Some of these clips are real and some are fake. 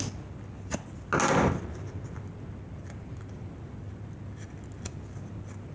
real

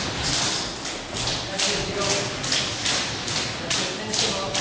real